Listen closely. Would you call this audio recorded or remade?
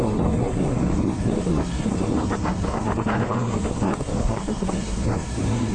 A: remade